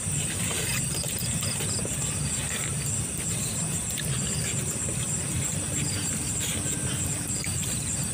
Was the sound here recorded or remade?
recorded